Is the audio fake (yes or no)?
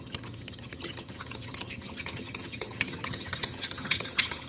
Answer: yes